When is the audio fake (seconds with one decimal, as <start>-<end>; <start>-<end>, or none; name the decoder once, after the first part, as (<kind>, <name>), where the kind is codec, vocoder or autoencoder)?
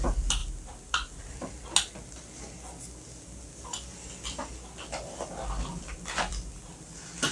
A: none